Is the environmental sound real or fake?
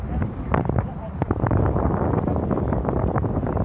fake